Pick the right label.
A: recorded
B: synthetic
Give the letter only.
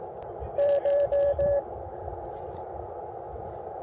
B